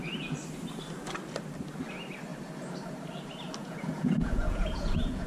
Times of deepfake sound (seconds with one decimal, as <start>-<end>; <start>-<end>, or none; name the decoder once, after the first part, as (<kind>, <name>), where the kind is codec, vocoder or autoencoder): 3.6-5.3 (vocoder, Vocos)